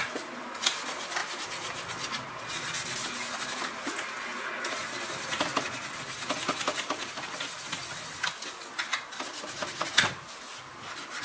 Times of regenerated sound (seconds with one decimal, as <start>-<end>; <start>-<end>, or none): none